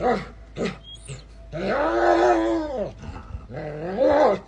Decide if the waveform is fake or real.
real